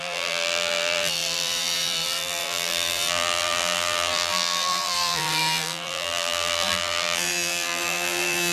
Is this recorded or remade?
remade